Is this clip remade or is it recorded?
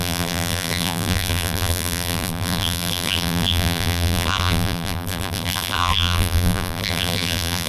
remade